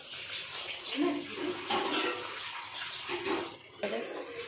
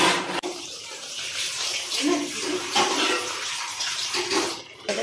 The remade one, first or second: second